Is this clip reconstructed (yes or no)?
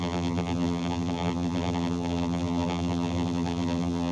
yes